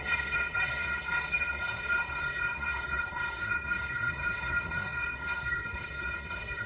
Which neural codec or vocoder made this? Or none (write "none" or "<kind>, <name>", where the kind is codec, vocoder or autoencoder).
codec, SNAC